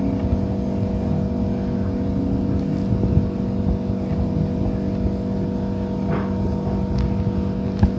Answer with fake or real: real